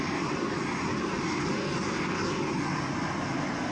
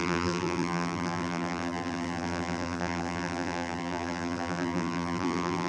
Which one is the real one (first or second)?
first